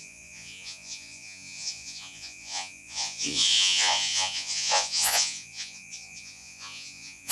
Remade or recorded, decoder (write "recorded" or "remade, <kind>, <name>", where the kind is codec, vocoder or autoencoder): remade, vocoder, Vocos